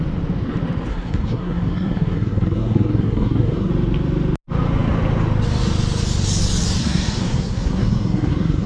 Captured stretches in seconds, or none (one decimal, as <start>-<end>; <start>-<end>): 0.0-0.9; 3.7-6.8